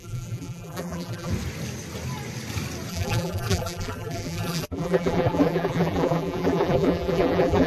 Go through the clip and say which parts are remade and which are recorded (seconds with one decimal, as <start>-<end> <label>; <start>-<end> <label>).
0.0-1.3 remade; 1.3-2.9 recorded; 2.9-7.7 remade